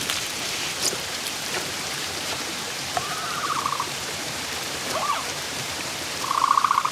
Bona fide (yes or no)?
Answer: no